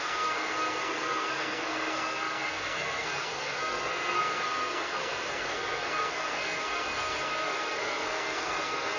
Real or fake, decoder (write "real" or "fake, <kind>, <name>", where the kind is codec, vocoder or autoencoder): fake, codec, SNAC